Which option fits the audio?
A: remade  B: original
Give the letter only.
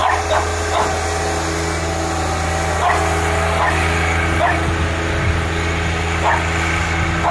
B